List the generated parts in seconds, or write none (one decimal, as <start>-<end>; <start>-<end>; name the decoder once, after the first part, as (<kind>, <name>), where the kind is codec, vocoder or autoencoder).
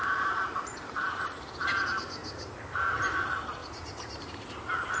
0.0-2.2 (vocoder, BigVGAN v2); 2.7-5.0